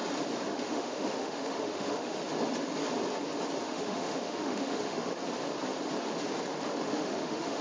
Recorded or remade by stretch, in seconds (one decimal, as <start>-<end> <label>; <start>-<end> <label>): 0.0-0.5 recorded; 0.5-2.2 remade; 2.2-3.6 recorded; 3.6-5.2 remade; 5.2-6.8 recorded; 6.8-7.6 remade